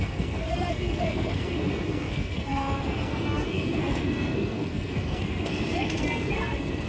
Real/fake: fake